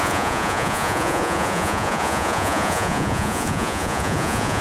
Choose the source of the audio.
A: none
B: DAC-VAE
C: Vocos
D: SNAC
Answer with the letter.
C